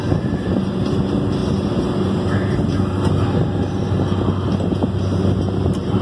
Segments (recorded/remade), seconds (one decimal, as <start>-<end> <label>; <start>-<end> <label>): 0.0-6.0 recorded